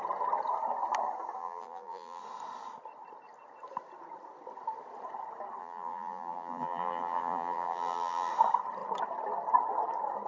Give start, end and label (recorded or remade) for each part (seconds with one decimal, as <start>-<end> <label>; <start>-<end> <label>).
0.0-1.4 recorded; 1.4-2.2 remade; 2.2-5.6 recorded; 5.6-8.3 remade; 8.3-10.3 recorded